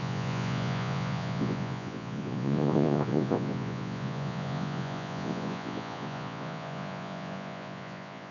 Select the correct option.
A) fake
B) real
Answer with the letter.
A